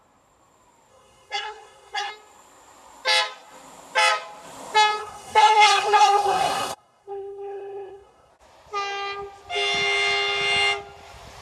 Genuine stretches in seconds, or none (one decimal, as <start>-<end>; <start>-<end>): 0.0-0.9; 2.1-5.0; 8.3-11.4